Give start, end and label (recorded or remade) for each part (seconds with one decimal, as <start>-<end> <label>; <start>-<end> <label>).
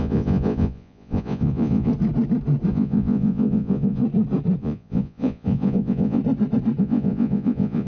0.0-1.9 remade; 1.9-2.7 recorded; 2.7-4.0 remade; 4.0-4.6 recorded; 4.6-6.2 remade; 6.2-6.8 recorded; 6.8-7.9 remade